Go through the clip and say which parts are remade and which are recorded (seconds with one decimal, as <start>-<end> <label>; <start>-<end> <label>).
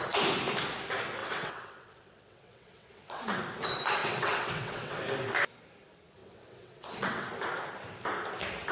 0.0-1.2 recorded; 1.2-3.4 remade; 3.4-4.0 recorded; 4.0-5.0 remade; 5.0-6.2 recorded; 6.2-7.3 remade; 7.3-8.7 recorded